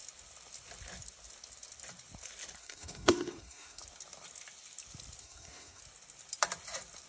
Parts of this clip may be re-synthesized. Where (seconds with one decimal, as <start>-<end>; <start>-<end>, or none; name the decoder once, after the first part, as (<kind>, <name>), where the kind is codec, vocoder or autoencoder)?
2.6-3.8 (codec, SNAC); 5.2-5.8